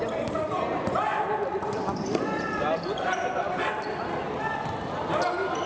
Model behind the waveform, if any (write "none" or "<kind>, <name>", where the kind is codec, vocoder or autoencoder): vocoder, BigVGAN v2